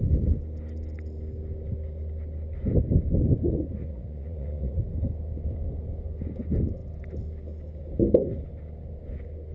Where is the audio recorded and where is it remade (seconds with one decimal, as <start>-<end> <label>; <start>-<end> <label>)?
0.0-3.8 recorded; 3.8-4.8 remade; 4.8-9.5 recorded

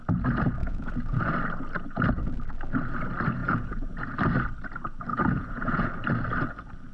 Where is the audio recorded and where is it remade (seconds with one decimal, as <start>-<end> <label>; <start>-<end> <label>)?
0.0-0.6 recorded; 0.6-1.3 remade; 1.3-3.4 recorded; 3.4-4.0 remade; 4.0-5.1 recorded; 5.1-5.9 remade; 5.9-6.9 recorded

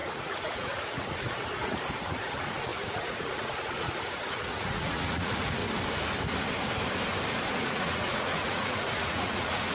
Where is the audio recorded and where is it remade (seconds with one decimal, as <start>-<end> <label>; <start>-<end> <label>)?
0.0-5.6 remade; 5.6-7.5 recorded; 7.5-9.7 remade

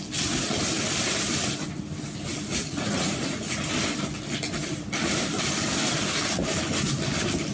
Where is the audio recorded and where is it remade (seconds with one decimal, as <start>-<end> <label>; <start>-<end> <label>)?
0.0-2.5 recorded; 2.5-3.7 remade; 3.7-7.5 recorded